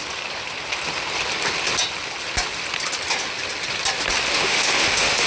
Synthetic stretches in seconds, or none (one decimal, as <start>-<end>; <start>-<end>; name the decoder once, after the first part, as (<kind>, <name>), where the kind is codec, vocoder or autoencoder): 4.3-5.3 (autoencoder, DAC-VAE)